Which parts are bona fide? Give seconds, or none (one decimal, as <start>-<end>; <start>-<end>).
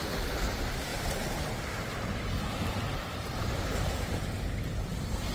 0.0-0.9; 4.1-5.3